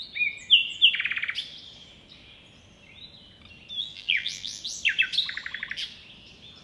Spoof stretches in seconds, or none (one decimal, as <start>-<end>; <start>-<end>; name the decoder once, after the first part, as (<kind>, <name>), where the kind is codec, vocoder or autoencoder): 3.8-4.6 (vocoder, BigVGAN v2)